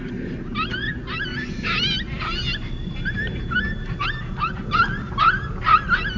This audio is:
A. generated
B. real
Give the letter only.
B